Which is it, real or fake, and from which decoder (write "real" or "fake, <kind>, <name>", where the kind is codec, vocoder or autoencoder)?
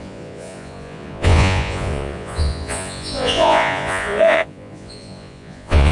fake, vocoder, Vocos